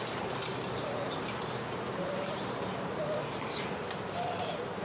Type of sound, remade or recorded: remade